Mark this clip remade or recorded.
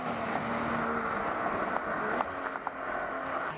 recorded